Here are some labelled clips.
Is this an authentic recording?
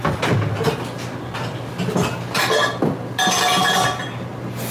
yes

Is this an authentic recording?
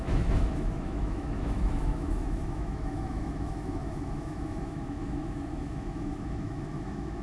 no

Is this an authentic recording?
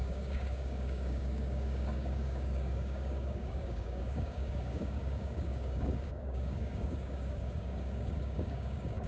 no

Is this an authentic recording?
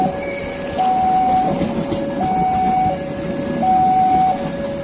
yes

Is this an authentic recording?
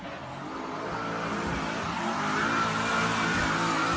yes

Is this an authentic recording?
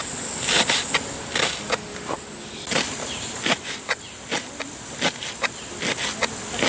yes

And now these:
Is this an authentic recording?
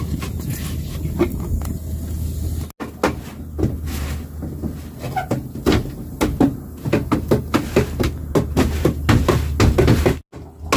yes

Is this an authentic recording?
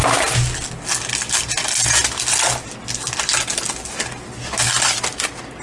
yes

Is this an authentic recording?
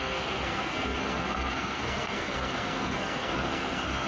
no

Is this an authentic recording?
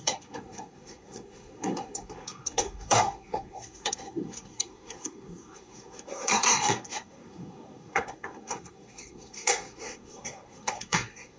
no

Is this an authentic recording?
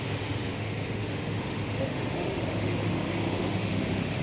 no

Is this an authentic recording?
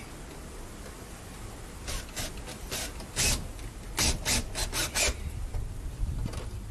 yes